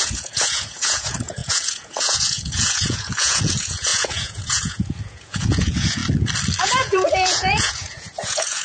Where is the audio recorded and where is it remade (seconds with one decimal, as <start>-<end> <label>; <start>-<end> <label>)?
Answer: 0.0-6.0 remade; 6.0-6.6 recorded; 6.6-8.6 remade